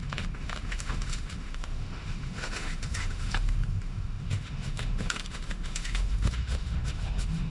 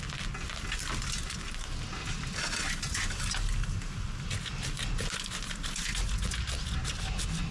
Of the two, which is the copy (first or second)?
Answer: first